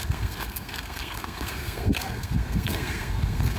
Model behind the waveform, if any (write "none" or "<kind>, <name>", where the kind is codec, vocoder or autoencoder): codec, SNAC